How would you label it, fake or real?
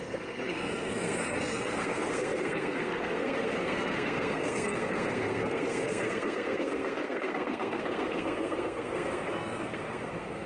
fake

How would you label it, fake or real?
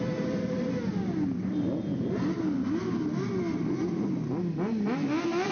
real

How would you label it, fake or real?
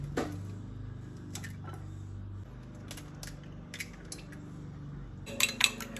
real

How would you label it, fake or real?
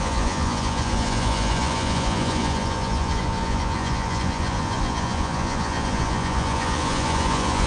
fake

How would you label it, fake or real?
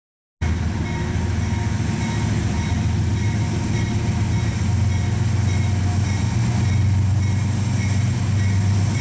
real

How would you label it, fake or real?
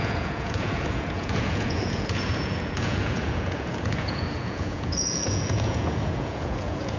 fake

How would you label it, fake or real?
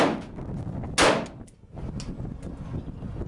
real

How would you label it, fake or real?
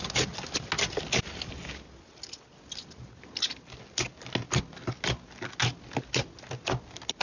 real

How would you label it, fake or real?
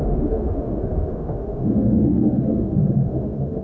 fake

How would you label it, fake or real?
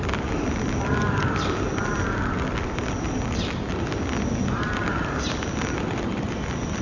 real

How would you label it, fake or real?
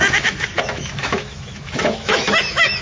fake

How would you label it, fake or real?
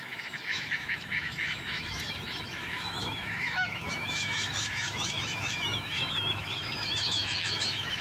fake